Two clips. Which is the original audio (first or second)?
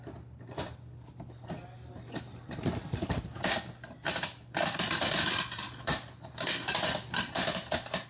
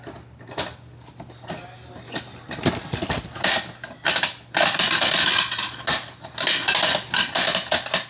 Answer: second